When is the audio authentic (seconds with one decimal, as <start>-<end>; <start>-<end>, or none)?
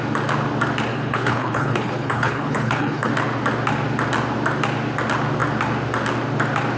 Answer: 0.0-0.9; 3.1-6.8